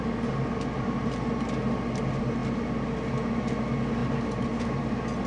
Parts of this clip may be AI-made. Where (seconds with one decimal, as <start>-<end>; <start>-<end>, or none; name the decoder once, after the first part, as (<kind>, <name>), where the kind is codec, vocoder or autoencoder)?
none